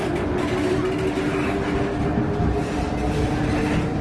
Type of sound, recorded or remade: recorded